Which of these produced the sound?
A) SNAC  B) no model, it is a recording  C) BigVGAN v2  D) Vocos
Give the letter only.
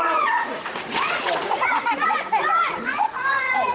D